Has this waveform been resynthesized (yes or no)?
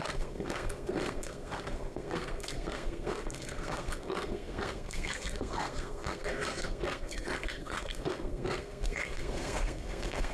yes